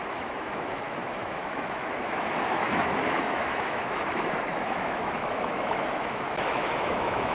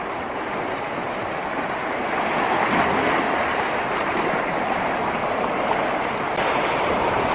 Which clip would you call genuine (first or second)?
second